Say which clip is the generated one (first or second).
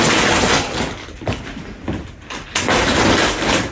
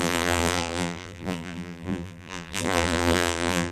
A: second